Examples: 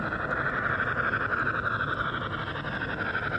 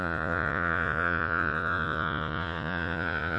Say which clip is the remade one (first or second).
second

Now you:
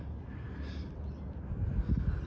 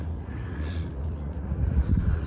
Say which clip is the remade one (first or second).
second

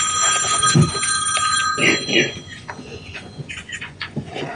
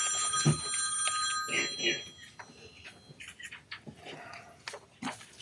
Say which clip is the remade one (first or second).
first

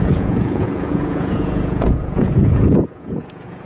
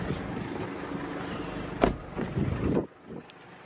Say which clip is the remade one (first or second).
first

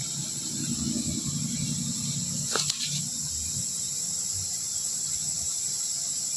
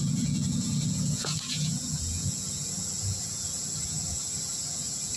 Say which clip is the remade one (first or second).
second